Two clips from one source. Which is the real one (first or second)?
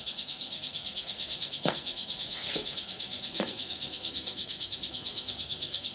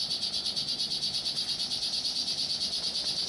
second